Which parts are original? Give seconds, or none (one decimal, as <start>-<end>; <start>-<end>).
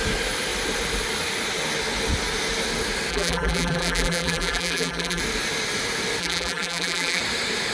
0.0-3.1; 5.2-6.2; 7.2-7.7